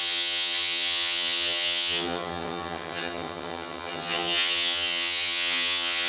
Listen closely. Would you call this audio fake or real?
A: fake